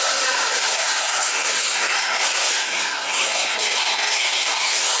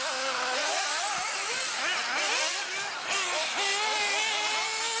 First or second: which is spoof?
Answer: first